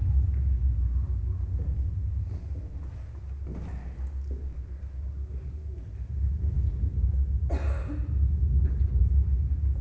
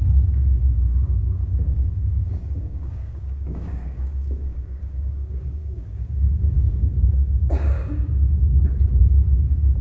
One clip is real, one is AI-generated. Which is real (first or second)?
first